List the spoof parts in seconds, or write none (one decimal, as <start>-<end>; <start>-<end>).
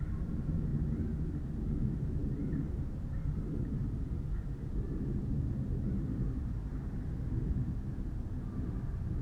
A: 0.0-0.7; 1.6-9.2